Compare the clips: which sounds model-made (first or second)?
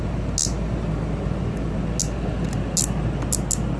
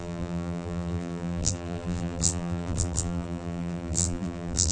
second